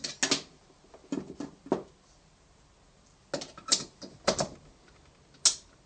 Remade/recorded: recorded